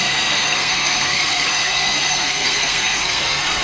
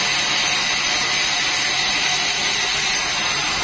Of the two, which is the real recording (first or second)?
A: second